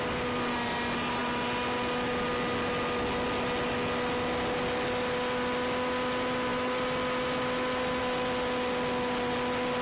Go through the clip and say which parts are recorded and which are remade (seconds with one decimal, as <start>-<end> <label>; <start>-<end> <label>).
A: 0.0-9.8 recorded